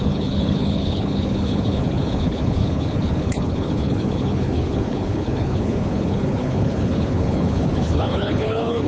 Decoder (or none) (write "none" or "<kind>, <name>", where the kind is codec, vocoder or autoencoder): codec, HILCodec